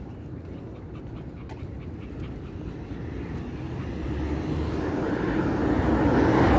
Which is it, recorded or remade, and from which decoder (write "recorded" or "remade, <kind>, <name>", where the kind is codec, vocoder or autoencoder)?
recorded